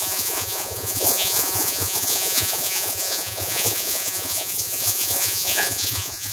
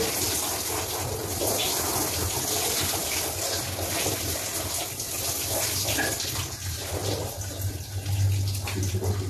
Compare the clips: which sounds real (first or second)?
second